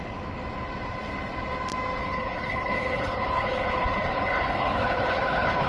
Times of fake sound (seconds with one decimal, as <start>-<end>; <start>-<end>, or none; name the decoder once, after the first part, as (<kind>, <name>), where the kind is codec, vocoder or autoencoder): 2.0-5.7 (codec, HILCodec)